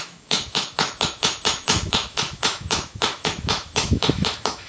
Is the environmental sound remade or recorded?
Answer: remade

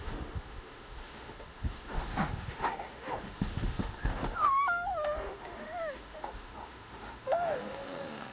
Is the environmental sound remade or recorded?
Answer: remade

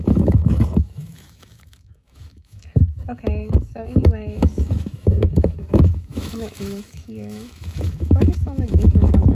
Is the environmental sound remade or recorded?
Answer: remade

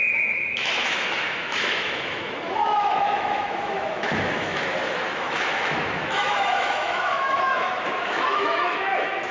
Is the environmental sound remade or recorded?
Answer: remade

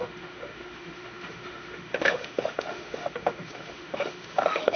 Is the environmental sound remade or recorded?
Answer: remade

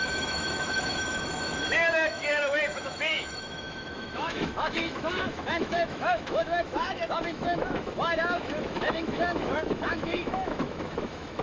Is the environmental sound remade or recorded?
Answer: remade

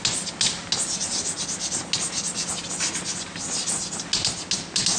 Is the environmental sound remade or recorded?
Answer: recorded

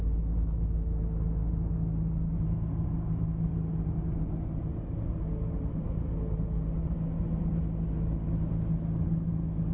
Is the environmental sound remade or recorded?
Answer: recorded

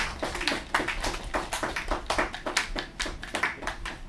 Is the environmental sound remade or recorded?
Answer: recorded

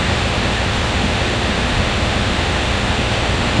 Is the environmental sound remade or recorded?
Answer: remade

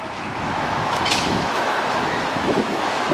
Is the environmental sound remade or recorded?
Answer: remade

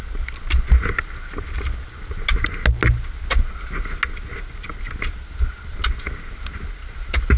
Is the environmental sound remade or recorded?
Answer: recorded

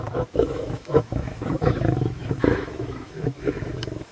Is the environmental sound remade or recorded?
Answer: remade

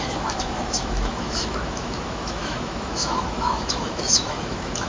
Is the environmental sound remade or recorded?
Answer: remade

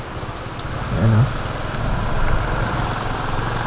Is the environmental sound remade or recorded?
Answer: recorded